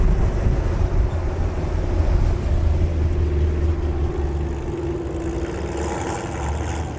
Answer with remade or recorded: recorded